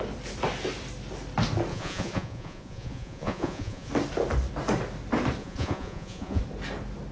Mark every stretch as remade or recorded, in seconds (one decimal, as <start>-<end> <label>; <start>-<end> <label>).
0.0-1.7 recorded; 1.7-3.9 remade; 3.9-5.4 recorded; 5.4-6.4 remade; 6.4-7.1 recorded